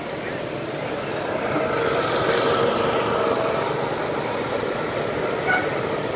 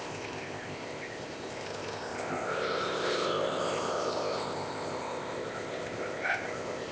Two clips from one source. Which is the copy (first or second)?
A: second